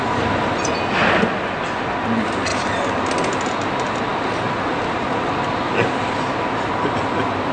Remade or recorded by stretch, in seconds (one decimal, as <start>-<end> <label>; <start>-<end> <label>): 0.0-2.5 recorded; 2.5-3.0 remade; 3.0-7.5 recorded